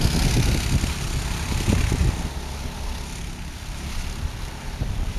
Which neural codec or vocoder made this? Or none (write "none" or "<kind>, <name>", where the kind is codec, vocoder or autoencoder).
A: none